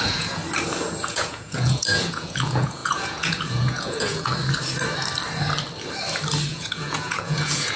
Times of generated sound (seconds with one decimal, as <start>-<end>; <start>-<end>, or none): 0.0-0.4; 1.1-4.3; 6.5-7.8